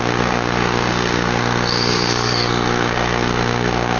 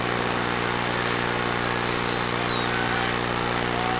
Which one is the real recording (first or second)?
second